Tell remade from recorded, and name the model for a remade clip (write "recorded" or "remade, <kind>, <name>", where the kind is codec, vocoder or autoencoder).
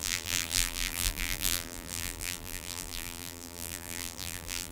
remade, vocoder, BigVGAN v2